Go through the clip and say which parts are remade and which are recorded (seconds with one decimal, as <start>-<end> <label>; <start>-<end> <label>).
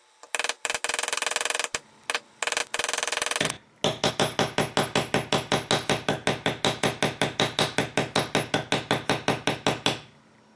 0.0-10.6 recorded